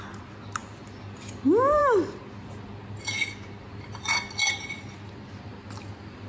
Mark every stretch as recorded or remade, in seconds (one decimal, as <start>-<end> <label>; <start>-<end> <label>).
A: 0.0-6.3 recorded